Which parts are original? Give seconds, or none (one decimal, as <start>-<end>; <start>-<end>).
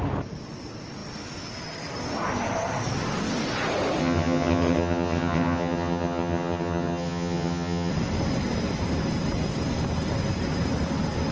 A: 0.0-4.0; 7.9-11.3